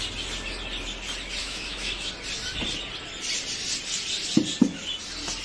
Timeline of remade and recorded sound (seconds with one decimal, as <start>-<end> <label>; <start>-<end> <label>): 0.0-1.4 recorded; 1.4-2.1 remade; 2.1-5.4 recorded